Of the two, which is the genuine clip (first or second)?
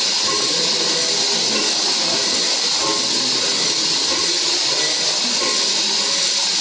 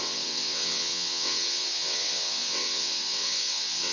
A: first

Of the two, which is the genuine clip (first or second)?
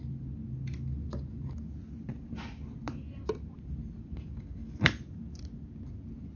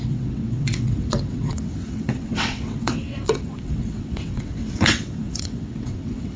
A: first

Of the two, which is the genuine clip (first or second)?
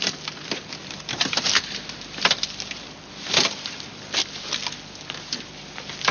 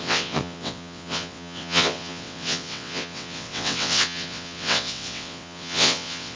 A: first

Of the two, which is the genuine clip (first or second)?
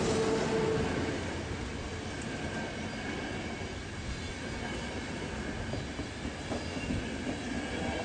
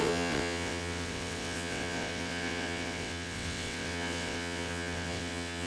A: first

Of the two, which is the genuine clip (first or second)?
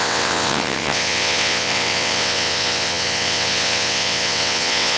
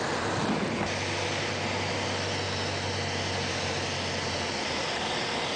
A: second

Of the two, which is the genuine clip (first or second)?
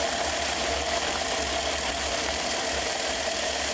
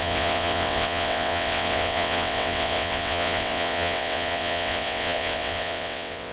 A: first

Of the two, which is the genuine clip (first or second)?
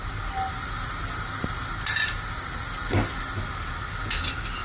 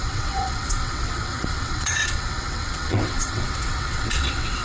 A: first